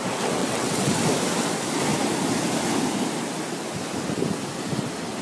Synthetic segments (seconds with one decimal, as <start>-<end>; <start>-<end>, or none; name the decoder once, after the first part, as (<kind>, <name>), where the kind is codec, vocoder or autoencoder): 0.4-1.0 (vocoder, WaveNeXt)